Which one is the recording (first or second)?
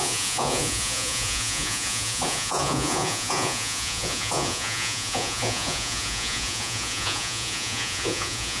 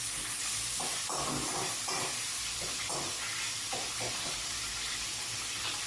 second